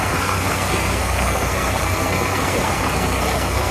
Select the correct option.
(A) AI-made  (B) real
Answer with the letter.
A